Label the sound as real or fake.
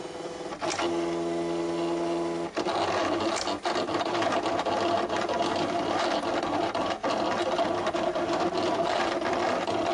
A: real